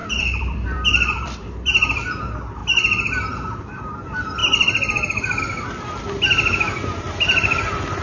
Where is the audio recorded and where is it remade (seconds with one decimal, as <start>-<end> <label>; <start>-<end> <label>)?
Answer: 0.0-2.2 remade; 2.2-8.0 recorded